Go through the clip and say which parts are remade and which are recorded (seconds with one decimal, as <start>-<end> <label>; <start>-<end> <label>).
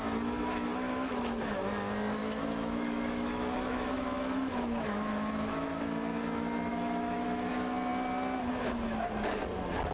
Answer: 0.0-0.7 recorded; 0.7-1.4 remade; 1.4-2.2 recorded; 2.2-5.8 remade; 5.8-6.7 recorded; 6.7-7.5 remade; 7.5-9.9 recorded